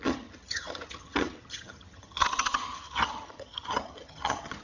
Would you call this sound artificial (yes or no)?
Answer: yes